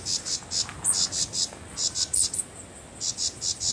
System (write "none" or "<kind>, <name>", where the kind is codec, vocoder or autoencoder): none